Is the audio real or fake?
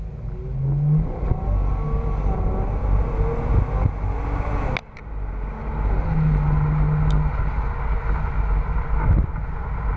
real